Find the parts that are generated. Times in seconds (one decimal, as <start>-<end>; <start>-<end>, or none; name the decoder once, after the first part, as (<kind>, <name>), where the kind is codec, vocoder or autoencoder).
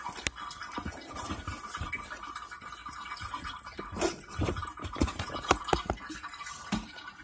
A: 2.8-7.2 (vocoder, BigVGAN v2)